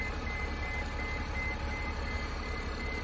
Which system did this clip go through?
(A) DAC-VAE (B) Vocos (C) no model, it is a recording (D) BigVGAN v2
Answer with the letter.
C